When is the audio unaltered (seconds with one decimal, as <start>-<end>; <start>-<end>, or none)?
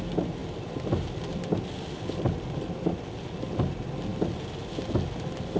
0.0-5.6